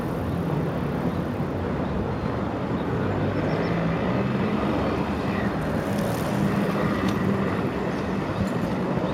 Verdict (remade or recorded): recorded